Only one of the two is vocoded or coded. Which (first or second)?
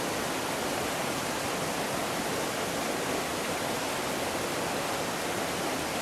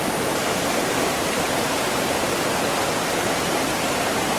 second